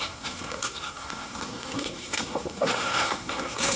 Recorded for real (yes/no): no